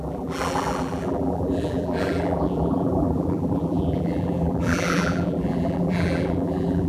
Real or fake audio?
fake